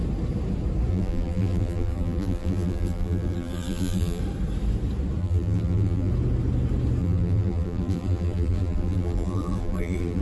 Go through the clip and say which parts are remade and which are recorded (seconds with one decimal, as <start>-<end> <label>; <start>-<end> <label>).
0.0-0.9 recorded; 0.9-4.2 remade; 4.2-5.2 recorded; 5.2-6.1 remade; 6.1-7.0 recorded; 7.0-10.2 remade

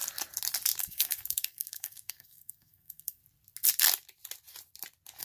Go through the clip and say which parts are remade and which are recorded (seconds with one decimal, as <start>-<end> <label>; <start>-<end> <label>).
0.0-0.8 recorded; 0.8-3.2 remade; 3.2-5.2 recorded

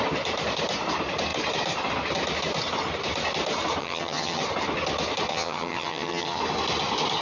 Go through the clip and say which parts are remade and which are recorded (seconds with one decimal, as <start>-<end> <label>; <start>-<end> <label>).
0.0-3.8 recorded; 3.8-4.4 remade; 4.4-5.3 recorded; 5.3-6.4 remade; 6.4-7.2 recorded